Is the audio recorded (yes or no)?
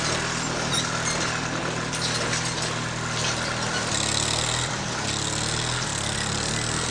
yes